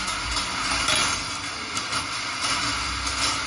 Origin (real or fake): real